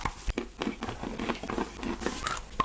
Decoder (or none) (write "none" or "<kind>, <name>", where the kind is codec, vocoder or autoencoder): none